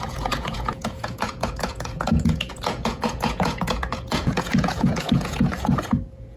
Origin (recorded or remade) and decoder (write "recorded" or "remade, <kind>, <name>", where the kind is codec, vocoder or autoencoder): remade, vocoder, Vocos